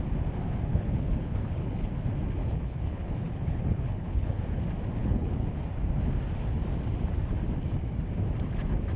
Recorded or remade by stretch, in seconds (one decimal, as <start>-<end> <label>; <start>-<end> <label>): 0.0-0.7 recorded; 0.7-1.9 remade; 1.9-2.4 recorded; 2.4-4.4 remade; 4.4-5.0 recorded; 5.0-5.6 remade; 5.6-9.0 recorded